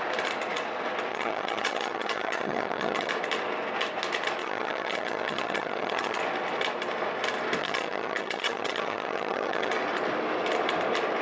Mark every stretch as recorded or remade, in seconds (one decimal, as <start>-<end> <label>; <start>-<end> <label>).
0.0-1.1 recorded; 1.1-3.1 remade; 3.1-4.4 recorded; 4.4-6.2 remade; 6.2-7.6 recorded; 7.6-9.7 remade; 9.7-11.2 recorded